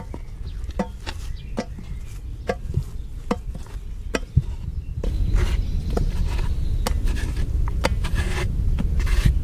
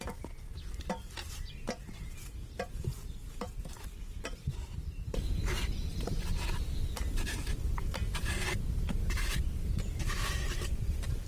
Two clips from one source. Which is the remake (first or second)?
second